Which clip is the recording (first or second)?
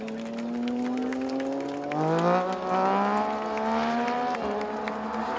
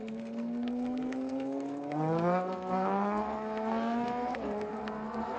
first